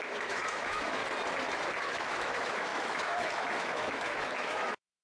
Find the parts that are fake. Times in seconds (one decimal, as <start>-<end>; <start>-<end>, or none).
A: 0.0-1.0; 1.8-5.0